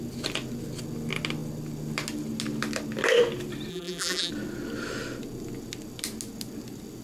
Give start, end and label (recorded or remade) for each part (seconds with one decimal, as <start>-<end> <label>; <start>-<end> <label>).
0.0-3.7 recorded; 3.7-4.3 remade; 4.3-7.0 recorded